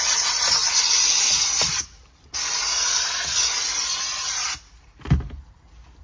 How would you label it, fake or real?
real